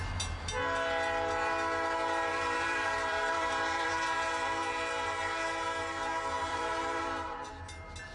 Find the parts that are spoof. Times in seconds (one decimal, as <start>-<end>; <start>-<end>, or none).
2.3-3.9; 6.5-7.5